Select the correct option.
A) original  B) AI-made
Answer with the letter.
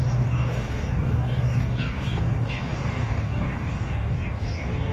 B